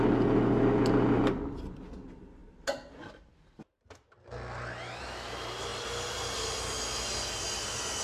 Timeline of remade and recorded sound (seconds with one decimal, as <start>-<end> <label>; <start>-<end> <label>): 0.0-8.0 recorded